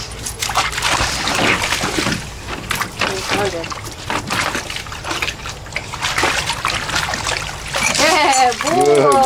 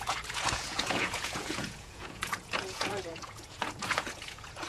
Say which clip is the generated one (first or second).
second